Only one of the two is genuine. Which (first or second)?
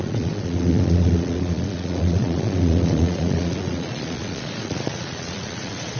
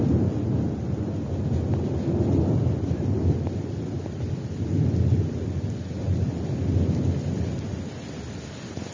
second